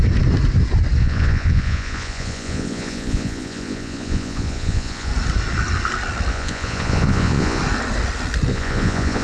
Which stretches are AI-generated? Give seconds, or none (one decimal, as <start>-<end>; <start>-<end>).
1.0-5.1; 6.3-7.6; 8.5-9.2